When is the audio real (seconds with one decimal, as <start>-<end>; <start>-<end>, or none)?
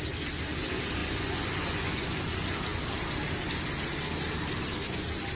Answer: 0.0-1.0; 2.3-5.4